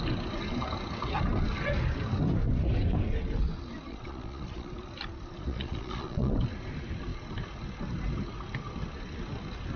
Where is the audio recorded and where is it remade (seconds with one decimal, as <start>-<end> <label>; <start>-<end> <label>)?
0.0-3.9 recorded; 3.9-4.7 remade; 4.7-5.5 recorded; 5.5-6.3 remade; 6.3-9.8 recorded